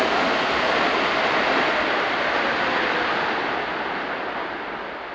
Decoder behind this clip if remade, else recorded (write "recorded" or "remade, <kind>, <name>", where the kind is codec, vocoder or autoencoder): recorded